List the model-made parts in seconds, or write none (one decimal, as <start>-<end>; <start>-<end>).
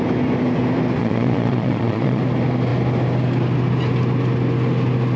1.0-2.2